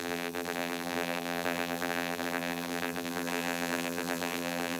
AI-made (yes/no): yes